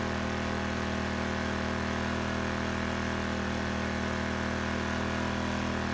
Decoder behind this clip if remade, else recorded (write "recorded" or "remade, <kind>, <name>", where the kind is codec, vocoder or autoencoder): recorded